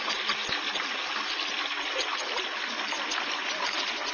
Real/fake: real